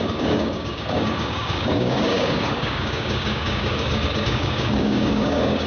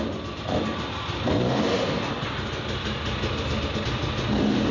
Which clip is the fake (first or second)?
first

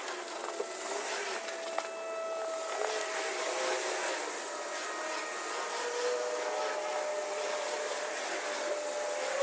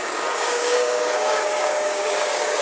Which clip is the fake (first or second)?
second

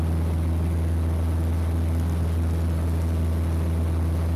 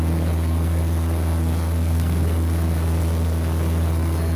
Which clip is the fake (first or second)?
second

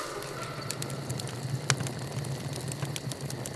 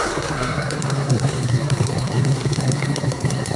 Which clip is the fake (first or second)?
second